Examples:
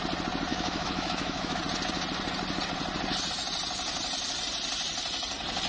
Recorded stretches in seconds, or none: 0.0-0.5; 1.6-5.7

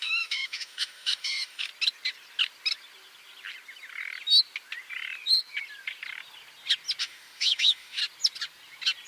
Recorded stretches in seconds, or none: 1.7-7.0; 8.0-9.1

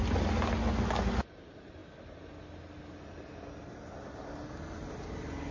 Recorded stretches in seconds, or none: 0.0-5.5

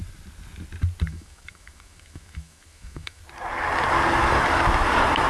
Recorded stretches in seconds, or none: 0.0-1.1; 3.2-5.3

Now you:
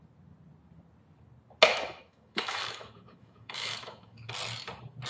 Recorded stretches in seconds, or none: 0.0-1.7; 4.3-5.1

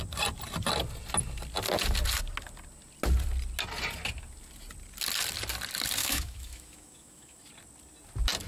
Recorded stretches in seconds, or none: 0.0-6.0; 7.4-8.5

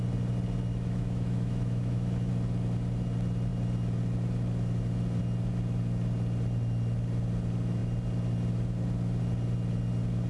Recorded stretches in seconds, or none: 0.0-0.7; 2.3-10.3